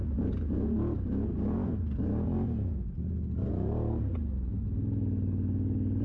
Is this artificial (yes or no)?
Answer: no